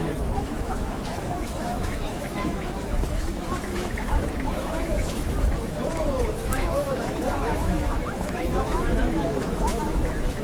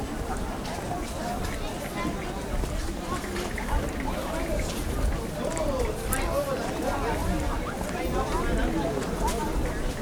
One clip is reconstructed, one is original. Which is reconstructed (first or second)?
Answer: first